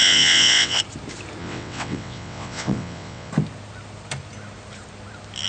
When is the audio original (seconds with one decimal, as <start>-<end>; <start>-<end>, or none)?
0.8-1.4; 3.3-5.5